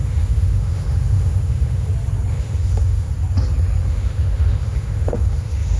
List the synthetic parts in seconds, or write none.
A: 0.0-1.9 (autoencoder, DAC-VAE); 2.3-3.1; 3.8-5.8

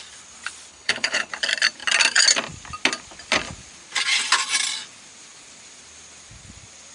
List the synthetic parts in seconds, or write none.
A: 0.7-1.3 (codec, HILCodec)

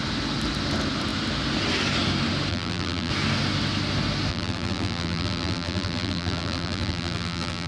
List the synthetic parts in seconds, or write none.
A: 2.5-3.1 (vocoder, BigVGAN v2); 4.3-7.7

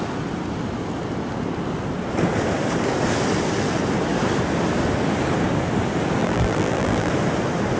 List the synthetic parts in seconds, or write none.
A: 6.2-7.1 (vocoder, BigVGAN v2)

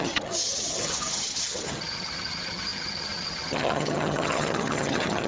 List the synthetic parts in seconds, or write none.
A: 0.0-5.3 (vocoder, HiFi-GAN)

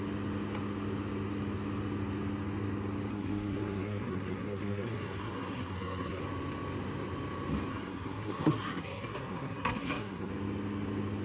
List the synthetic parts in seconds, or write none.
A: 3.1-6.2 (codec, SNAC); 7.7-10.3

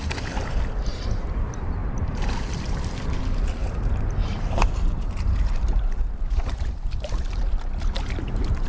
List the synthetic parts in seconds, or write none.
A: 1.8-3.2 (vocoder, BigVGAN v2); 3.6-7.2

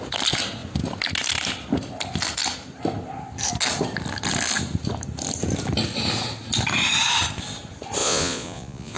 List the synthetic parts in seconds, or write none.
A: 8.0-9.0 (vocoder, Vocos)